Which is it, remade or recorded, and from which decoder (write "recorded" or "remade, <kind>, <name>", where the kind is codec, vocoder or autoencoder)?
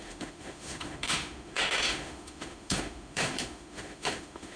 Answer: remade, autoencoder, DAC-VAE